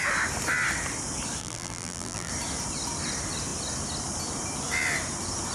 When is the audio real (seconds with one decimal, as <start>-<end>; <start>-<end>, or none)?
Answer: 0.0-1.4; 2.3-5.5